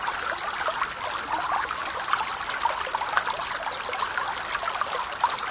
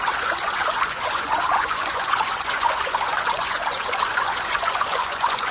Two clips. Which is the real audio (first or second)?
first